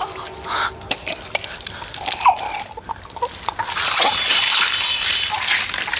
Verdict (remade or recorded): recorded